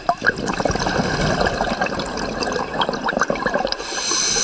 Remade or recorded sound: recorded